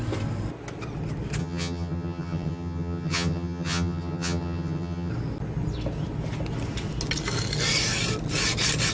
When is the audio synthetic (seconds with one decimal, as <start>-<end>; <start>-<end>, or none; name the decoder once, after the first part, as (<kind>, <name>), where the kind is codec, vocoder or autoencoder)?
1.4-5.1 (vocoder, HiFi-GAN)